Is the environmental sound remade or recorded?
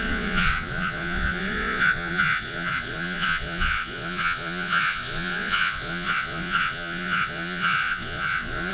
remade